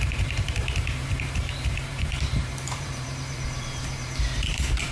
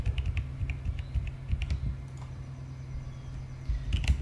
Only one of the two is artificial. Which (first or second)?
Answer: first